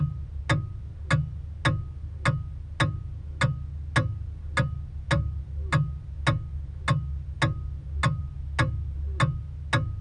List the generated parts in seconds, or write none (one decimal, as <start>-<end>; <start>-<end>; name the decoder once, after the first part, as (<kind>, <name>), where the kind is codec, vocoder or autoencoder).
none